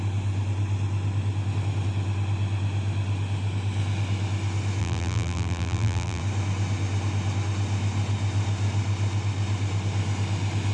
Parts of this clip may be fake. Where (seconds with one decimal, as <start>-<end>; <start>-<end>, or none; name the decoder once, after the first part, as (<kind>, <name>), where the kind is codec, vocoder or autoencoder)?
4.8-6.2 (vocoder, BigVGAN v2)